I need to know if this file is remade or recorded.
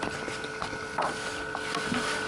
recorded